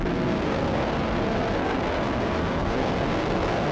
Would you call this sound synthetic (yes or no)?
yes